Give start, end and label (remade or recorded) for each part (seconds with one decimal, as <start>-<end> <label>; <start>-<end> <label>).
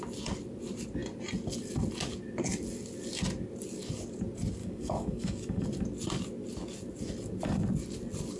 0.0-4.6 recorded; 4.6-5.6 remade; 5.6-8.4 recorded